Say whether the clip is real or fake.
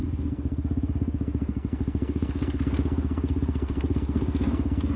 fake